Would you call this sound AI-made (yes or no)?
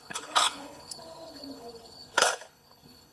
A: yes